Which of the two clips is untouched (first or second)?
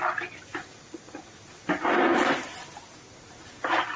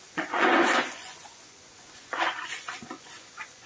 first